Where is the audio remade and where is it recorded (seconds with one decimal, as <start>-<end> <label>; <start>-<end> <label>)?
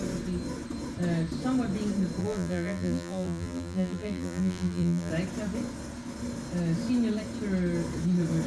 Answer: 0.0-2.2 recorded; 2.2-5.1 remade; 5.1-8.5 recorded